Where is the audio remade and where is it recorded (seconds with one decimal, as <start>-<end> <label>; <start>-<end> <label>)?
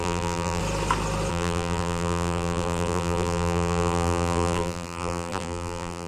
0.0-0.6 remade; 0.6-1.3 recorded; 1.3-6.1 remade